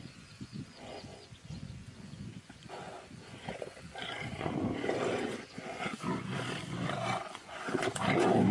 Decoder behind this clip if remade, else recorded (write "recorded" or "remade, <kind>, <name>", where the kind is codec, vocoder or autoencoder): remade, vocoder, Vocos